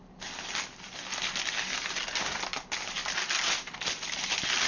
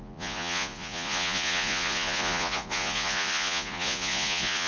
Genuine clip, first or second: first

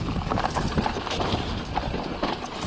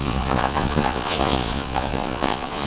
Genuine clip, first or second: first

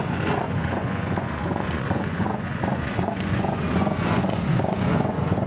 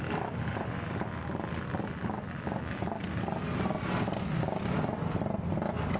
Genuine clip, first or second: second